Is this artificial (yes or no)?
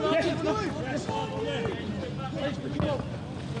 no